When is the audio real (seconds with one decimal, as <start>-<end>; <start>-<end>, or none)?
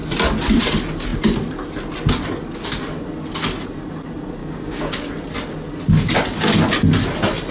0.0-4.4; 5.1-7.5